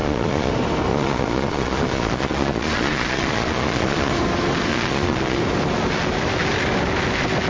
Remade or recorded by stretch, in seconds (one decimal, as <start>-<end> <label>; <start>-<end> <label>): 0.0-0.5 remade; 0.5-0.9 recorded; 0.9-4.1 remade; 4.1-4.7 recorded; 4.7-5.4 remade; 5.4-7.5 recorded